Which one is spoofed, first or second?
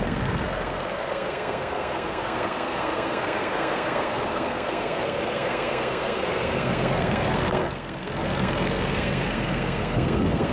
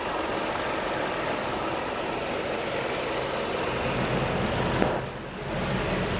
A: first